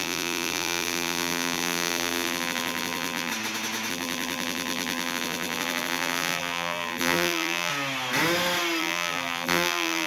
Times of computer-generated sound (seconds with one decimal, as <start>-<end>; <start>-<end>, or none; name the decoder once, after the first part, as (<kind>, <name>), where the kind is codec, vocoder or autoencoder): 0.0-3.3 (vocoder, BigVGAN v2); 3.9-7.7; 8.8-10.1